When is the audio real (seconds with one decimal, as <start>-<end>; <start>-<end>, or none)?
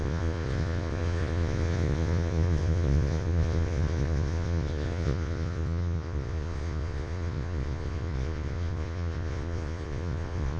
none